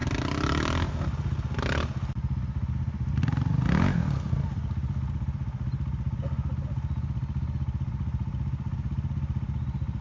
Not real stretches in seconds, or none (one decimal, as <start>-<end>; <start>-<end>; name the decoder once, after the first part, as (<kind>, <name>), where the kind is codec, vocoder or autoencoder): none